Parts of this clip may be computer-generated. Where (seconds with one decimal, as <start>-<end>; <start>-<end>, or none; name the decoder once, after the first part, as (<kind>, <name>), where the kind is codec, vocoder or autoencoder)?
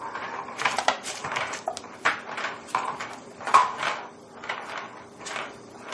0.0-3.6 (vocoder, BigVGAN v2); 5.2-5.9